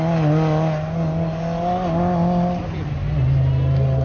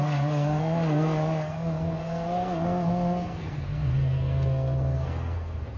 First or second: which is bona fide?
first